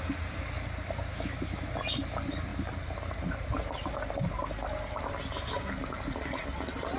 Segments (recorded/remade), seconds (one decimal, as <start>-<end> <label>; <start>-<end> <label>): 0.0-1.1 recorded; 1.1-1.7 remade; 1.7-7.0 recorded